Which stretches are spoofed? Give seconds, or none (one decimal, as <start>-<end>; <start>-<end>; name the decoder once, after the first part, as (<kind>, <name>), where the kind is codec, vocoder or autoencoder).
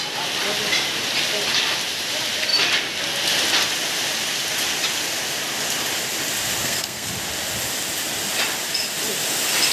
6.6-7.1 (codec, SNAC)